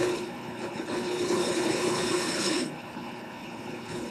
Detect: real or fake fake